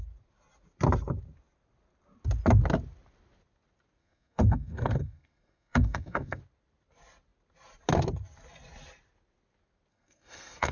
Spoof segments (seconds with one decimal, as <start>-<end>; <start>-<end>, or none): 4.0-6.4; 9.9-10.7